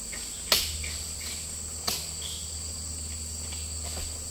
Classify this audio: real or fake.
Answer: real